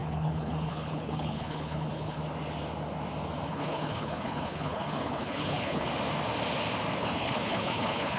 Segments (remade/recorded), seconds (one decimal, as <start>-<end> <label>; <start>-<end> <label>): 0.0-2.2 remade; 2.2-3.5 recorded; 3.5-5.9 remade; 5.9-7.0 recorded; 7.0-8.2 remade